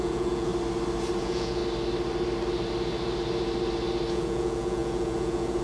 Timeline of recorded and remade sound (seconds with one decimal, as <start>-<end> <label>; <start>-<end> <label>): 0.0-0.5 remade; 0.5-1.2 recorded; 1.2-1.6 remade; 1.6-4.1 recorded; 4.1-5.6 remade